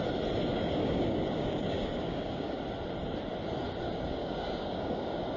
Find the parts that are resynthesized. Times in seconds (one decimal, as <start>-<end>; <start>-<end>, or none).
0.5-2.6; 4.2-5.4

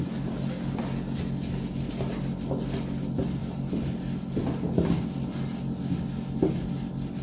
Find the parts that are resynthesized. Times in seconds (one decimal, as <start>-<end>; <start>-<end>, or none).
none

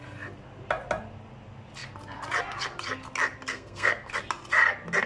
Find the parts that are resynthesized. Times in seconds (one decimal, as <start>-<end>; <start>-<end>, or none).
3.5-4.1

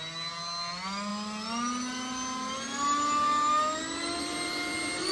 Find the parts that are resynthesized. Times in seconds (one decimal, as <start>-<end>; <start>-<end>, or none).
none

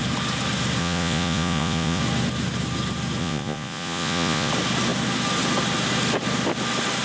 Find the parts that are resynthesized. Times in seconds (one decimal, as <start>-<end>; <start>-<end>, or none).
0.8-2.0; 3.2-4.5

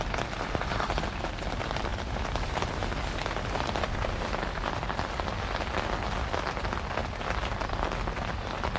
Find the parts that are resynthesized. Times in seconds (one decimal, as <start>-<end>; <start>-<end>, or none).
none

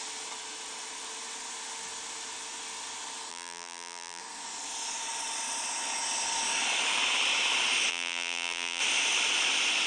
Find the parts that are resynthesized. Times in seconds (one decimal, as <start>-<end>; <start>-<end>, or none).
3.3-4.2; 7.9-8.8

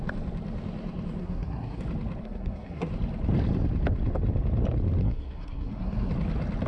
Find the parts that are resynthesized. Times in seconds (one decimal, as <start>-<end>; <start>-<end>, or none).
1.2-1.8; 2.2-2.9; 5.0-6.1